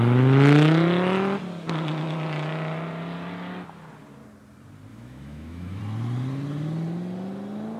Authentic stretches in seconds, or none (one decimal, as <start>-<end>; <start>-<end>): 0.0-4.9; 5.8-7.8